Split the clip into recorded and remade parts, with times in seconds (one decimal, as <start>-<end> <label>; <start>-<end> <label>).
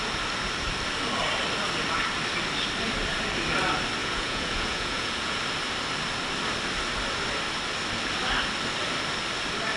0.0-4.0 recorded; 4.0-5.4 remade; 5.4-9.8 recorded